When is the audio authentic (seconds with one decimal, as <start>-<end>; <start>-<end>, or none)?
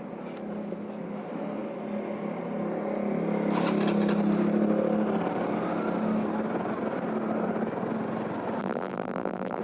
0.0-8.6